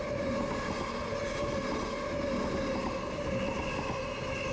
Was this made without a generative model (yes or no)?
yes